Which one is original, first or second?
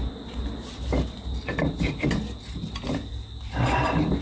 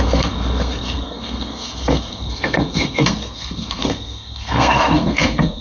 first